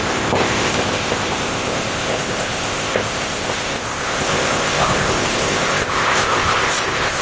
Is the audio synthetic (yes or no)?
yes